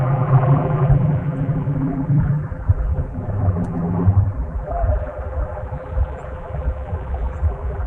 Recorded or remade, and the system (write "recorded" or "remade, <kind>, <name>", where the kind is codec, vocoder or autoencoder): remade, vocoder, BigVGAN v2